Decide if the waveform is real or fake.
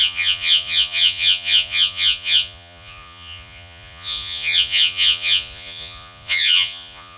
fake